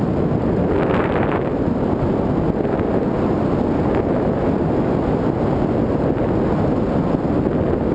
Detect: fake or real real